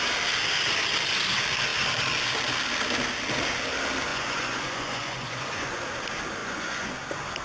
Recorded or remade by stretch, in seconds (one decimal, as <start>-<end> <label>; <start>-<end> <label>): 0.0-4.1 recorded; 4.1-5.8 remade; 5.8-6.4 recorded; 6.4-6.9 remade; 6.9-7.4 recorded